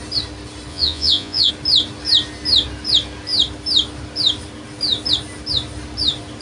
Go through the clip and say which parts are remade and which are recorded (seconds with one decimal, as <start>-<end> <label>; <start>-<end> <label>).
0.0-0.7 recorded; 0.7-1.5 remade; 1.5-6.4 recorded